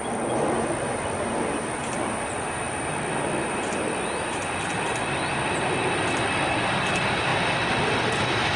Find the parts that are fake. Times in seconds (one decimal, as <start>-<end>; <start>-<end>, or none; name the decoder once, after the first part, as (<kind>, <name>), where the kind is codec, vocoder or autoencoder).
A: none